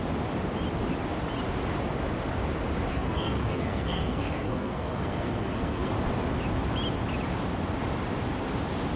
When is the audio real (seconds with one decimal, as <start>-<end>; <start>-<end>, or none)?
0.0-2.9; 5.9-9.0